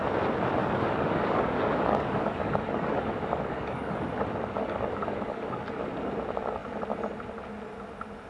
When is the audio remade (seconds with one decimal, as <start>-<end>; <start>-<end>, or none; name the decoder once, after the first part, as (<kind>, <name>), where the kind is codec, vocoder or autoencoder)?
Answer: 0.6-4.0 (codec, DAC); 4.6-5.6